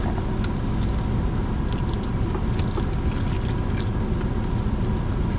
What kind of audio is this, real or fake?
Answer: real